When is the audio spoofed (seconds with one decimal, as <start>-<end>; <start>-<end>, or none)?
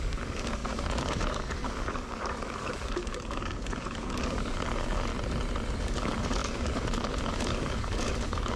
0.0-5.1; 5.8-8.6